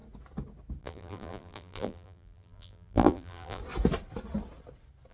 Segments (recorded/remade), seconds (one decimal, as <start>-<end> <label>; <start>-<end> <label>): 0.0-0.8 recorded; 0.8-3.6 remade; 3.6-5.1 recorded